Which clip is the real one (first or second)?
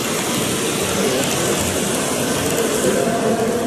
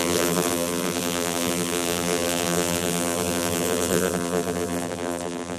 first